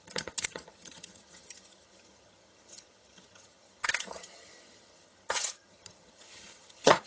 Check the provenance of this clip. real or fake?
fake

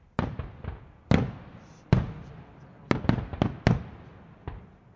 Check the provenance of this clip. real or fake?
real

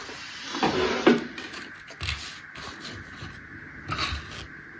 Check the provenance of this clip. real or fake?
real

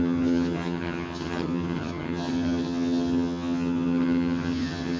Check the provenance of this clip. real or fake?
fake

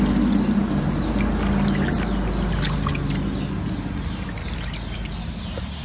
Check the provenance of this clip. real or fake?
real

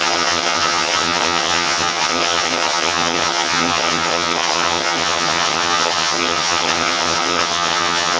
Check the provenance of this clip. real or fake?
fake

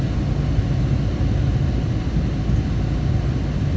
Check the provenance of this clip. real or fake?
real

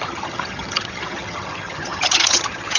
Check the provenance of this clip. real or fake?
fake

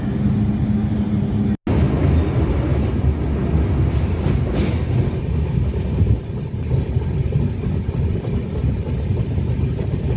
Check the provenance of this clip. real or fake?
real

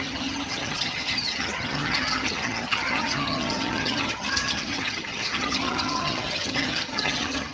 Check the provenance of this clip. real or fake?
fake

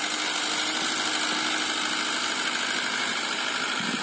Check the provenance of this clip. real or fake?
real